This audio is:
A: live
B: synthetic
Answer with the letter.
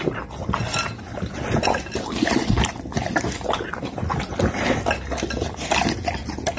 A